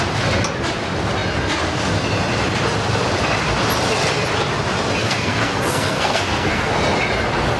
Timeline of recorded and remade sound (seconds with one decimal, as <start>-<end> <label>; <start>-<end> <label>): 0.0-5.0 recorded; 5.0-6.7 remade; 6.7-7.6 recorded